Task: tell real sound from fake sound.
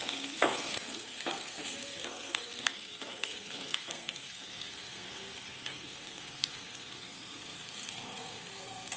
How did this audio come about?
fake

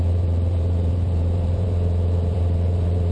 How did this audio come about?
fake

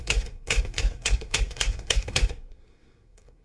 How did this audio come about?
fake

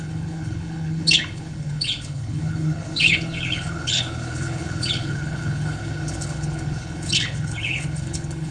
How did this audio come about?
fake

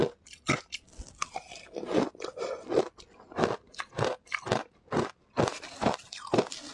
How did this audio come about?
real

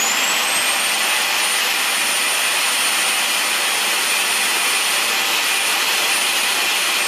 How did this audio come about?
real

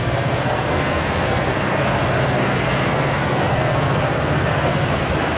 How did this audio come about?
fake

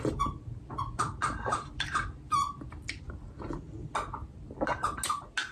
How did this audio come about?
real